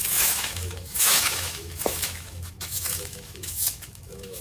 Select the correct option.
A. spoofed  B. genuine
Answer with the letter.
A